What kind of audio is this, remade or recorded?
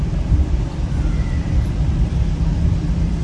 remade